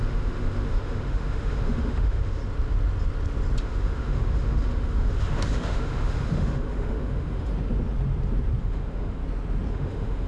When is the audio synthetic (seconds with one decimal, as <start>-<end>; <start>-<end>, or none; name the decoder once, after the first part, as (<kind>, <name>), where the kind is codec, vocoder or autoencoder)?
0.0-2.4 (autoencoder, DAC-VAE); 3.6-7.5; 8.6-9.2; 9.7-10.3